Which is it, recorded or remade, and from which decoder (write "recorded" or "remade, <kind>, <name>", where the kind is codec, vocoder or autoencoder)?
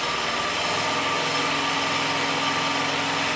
recorded